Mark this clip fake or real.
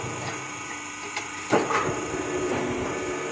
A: fake